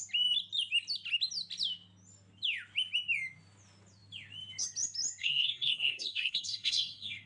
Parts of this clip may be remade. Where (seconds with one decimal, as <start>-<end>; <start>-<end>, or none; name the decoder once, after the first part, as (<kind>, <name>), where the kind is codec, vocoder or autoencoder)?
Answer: 5.2-7.3 (codec, SNAC)